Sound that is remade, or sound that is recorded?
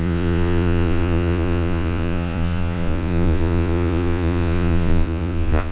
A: remade